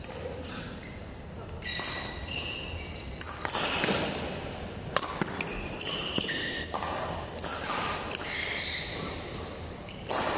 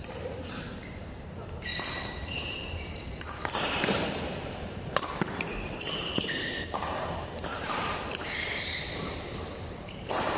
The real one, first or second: first